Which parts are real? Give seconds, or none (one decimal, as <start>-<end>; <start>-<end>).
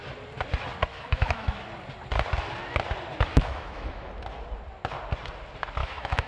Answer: 0.0-0.9; 1.6-3.3; 4.1-5.8